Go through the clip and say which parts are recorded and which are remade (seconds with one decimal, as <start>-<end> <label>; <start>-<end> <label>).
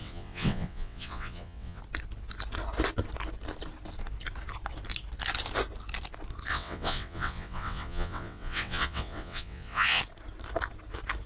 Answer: 0.0-1.8 remade; 1.8-6.5 recorded; 6.5-10.0 remade; 10.0-11.3 recorded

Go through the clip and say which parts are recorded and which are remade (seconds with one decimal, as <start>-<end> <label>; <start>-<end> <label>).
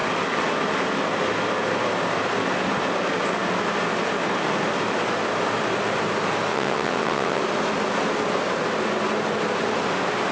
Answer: 0.0-6.5 recorded; 6.5-7.4 remade; 7.4-10.3 recorded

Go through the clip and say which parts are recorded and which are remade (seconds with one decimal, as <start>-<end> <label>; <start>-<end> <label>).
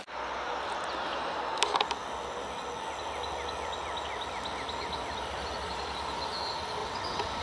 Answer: 0.0-6.8 recorded; 6.8-7.4 remade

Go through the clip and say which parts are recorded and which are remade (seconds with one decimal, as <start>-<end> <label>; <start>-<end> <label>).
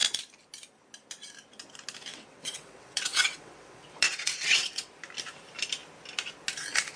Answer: 0.0-2.1 recorded; 2.1-4.9 remade; 4.9-7.0 recorded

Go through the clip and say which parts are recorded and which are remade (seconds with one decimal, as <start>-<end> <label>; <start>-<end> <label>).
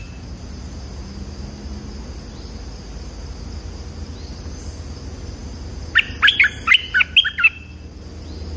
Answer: 0.0-8.6 recorded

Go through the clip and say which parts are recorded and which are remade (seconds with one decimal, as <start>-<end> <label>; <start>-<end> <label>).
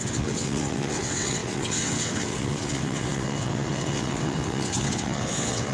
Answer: 0.0-5.7 remade